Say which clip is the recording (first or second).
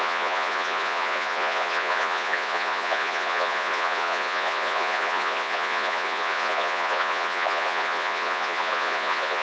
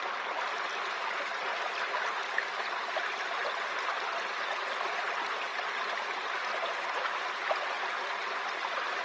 second